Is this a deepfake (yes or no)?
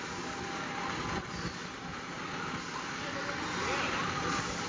no